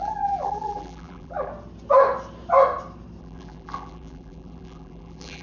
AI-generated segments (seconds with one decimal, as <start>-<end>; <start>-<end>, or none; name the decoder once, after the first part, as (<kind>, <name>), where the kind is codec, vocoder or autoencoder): 0.0-1.5 (vocoder, BigVGAN v2); 3.2-5.4